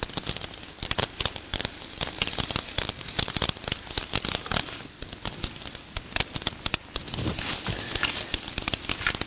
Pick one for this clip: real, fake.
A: real